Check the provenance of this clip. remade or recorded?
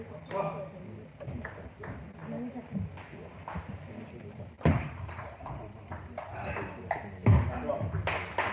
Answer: recorded